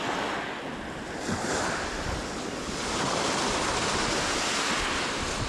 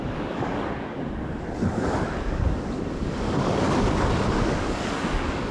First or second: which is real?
first